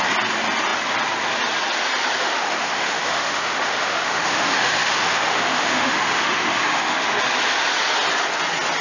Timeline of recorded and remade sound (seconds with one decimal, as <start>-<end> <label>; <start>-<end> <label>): 0.0-2.2 recorded; 2.2-7.2 remade; 7.2-8.8 recorded